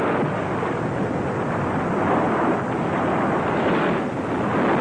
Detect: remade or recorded recorded